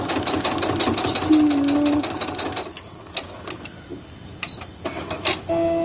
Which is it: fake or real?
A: real